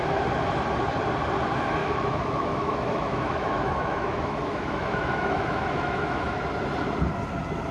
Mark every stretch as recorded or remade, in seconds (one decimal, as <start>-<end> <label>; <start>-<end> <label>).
0.0-1.8 recorded; 1.8-6.4 remade; 6.4-7.7 recorded